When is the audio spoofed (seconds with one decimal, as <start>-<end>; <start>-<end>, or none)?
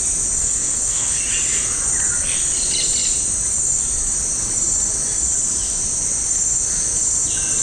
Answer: 0.4-1.2